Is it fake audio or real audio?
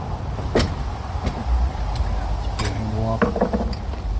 real